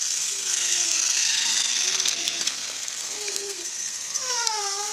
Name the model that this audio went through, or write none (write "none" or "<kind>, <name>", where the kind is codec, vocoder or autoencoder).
codec, SNAC